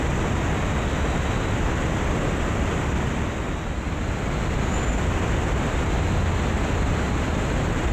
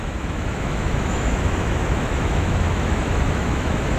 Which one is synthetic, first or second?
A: second